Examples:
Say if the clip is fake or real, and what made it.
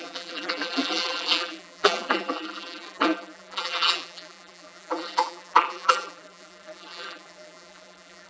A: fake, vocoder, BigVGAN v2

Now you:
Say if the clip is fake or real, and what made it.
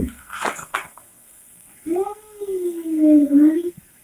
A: fake, codec, SNAC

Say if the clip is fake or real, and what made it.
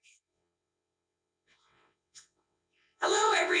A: fake, vocoder, WaveNeXt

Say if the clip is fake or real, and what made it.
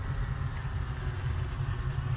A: real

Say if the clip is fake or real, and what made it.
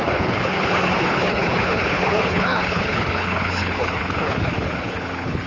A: fake, codec, HILCodec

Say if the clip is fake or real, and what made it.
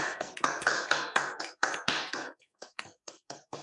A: fake, codec, SNAC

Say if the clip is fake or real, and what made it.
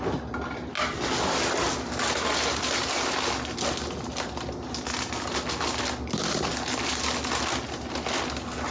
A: real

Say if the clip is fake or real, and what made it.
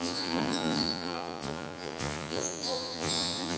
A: fake, vocoder, Vocos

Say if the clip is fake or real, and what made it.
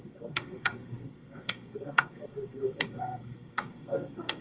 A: fake, codec, SNAC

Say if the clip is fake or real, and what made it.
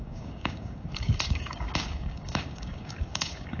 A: fake, codec, DAC